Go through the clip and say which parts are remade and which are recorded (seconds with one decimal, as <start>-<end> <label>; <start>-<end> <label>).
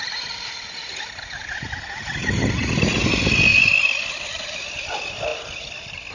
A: 0.0-6.1 recorded